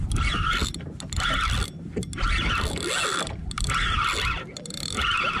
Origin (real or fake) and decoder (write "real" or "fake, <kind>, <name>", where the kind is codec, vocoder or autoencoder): real